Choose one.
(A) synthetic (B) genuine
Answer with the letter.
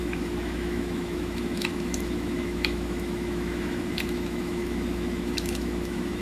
A